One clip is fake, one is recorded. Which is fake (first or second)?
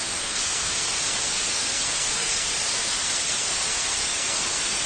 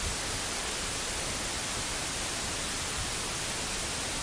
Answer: first